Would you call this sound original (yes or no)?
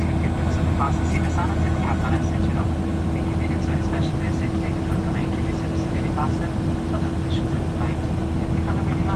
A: yes